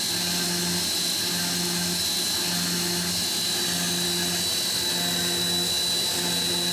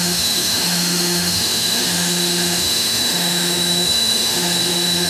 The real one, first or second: first